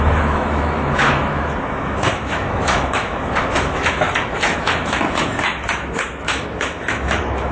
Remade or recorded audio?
remade